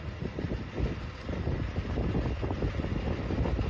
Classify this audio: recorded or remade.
recorded